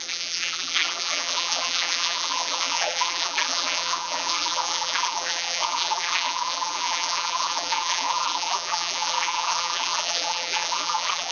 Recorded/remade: remade